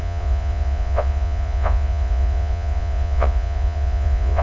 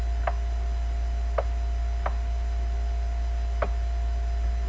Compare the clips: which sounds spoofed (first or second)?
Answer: first